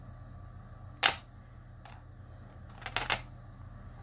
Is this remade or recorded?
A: recorded